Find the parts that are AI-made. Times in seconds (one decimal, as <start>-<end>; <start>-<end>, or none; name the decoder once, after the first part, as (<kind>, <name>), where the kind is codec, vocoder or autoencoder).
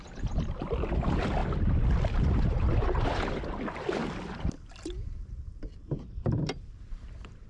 0.0-7.5 (vocoder, BigVGAN v2)